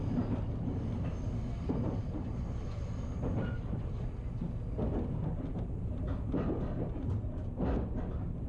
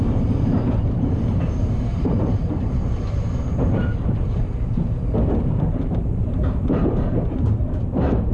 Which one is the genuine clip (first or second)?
first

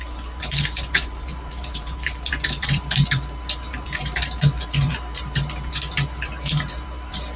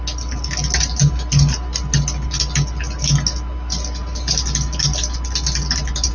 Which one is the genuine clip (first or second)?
second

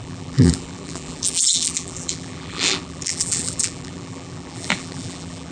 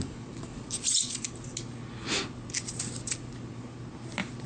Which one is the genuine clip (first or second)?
second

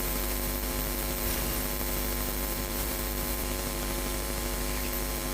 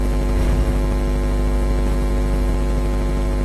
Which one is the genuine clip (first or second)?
second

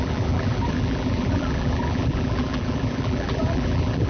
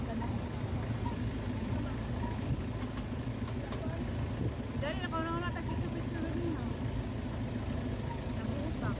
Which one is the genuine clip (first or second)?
second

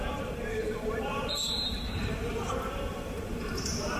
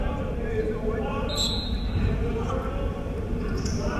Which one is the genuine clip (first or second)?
second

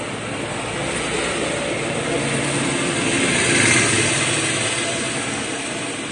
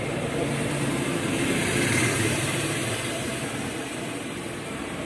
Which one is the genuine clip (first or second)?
first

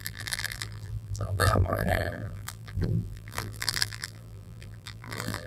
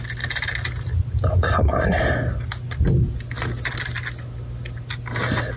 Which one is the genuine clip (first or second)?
second